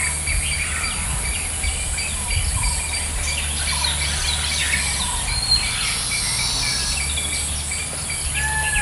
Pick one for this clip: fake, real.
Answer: real